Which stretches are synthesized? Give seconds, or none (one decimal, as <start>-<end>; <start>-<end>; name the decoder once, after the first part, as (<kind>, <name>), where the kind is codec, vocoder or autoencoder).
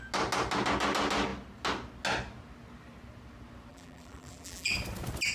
3.7-4.7 (vocoder, BigVGAN v2)